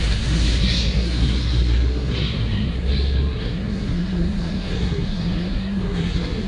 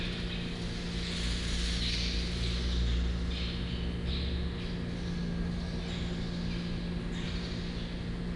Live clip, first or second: second